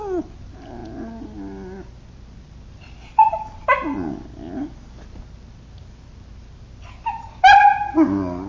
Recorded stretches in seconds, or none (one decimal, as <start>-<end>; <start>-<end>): 0.0-8.5